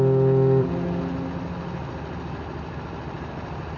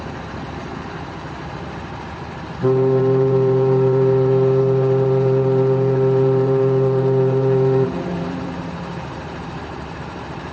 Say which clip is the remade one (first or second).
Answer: second